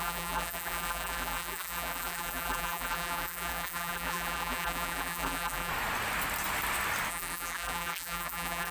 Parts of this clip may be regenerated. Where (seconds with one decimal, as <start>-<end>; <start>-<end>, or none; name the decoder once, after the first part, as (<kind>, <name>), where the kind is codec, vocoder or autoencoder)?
0.0-5.7 (vocoder, BigVGAN v2); 7.1-8.7